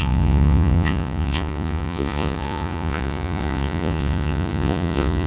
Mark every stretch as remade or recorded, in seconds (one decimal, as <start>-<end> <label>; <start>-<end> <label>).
0.0-5.3 remade